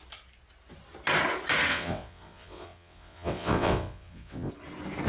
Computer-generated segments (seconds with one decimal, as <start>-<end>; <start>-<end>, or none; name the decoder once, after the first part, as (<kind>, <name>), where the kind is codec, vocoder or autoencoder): 1.7-4.5 (vocoder, WaveNeXt)